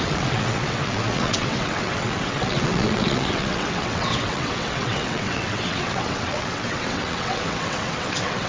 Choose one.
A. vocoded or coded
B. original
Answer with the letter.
A